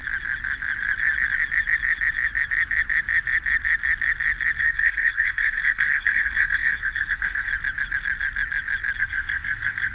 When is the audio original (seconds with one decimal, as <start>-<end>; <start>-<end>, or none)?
0.0-4.6; 7.5-9.0